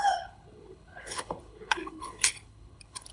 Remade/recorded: remade